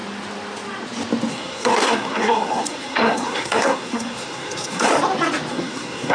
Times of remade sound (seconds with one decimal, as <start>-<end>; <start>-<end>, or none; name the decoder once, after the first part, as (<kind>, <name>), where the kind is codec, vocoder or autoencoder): 1.3-4.9 (codec, SNAC); 5.5-6.1